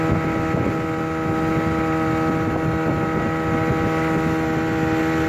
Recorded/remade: recorded